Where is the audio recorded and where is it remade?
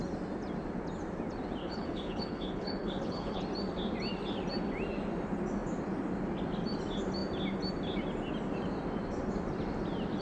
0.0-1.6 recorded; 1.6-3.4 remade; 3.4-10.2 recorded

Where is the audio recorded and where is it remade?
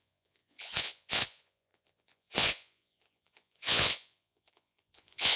0.0-5.4 remade